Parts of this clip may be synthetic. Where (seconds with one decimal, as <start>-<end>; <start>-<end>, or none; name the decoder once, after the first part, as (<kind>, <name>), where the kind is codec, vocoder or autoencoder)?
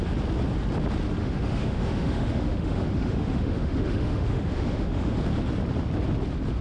1.2-5.2 (autoencoder, DAC-VAE)